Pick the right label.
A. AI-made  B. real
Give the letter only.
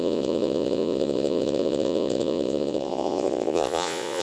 A